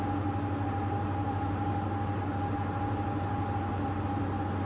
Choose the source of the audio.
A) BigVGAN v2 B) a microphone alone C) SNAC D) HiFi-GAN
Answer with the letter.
B